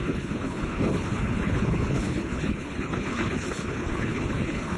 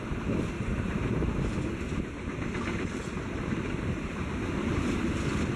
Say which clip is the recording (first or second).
second